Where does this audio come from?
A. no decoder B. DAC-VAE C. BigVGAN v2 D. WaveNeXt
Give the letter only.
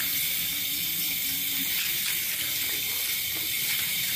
A